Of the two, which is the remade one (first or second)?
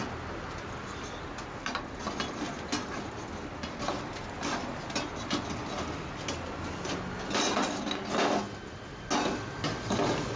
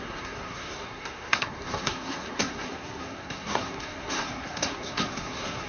second